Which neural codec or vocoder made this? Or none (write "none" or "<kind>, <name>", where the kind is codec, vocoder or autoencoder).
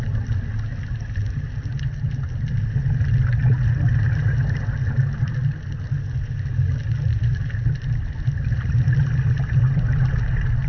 none